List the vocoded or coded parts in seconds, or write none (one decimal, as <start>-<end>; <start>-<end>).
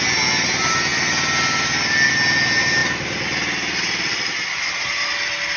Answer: none